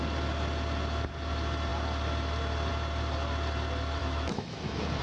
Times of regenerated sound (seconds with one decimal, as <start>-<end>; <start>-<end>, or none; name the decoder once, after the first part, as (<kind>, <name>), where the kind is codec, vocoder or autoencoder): 4.0-5.0 (autoencoder, DAC-VAE)